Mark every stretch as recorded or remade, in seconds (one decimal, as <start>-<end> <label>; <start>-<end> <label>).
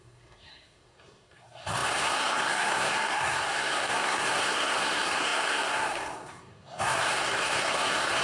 0.0-8.2 remade